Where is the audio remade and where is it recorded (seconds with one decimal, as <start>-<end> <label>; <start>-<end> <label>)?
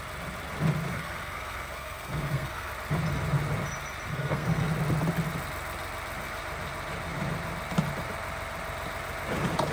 0.0-0.9 recorded; 0.9-2.7 remade; 2.7-4.1 recorded; 4.1-4.7 remade; 4.7-9.7 recorded